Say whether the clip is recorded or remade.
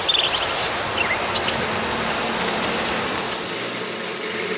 recorded